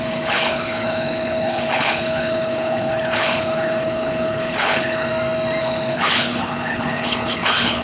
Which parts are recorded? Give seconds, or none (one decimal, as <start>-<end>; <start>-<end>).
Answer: 5.1-5.6